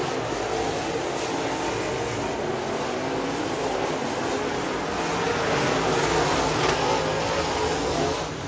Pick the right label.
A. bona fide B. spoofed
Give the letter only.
A